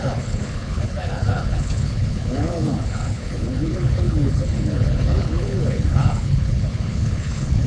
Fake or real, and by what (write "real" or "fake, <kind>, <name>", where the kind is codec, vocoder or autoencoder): fake, codec, HILCodec